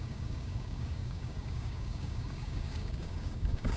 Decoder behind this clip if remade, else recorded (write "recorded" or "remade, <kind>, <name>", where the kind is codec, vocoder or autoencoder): remade, codec, DAC